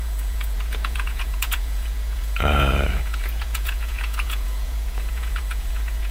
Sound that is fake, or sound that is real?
fake